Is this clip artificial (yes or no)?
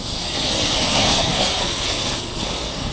yes